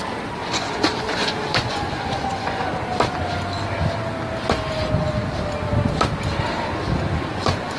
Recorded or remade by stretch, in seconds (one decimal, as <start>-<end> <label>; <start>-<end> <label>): 0.0-0.4 recorded; 0.4-2.7 remade; 2.7-7.3 recorded; 7.3-7.8 remade